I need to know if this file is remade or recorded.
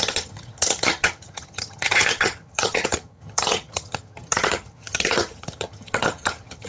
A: remade